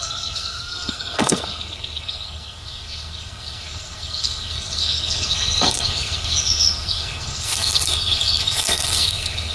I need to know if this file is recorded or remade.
remade